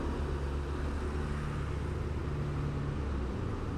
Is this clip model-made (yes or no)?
no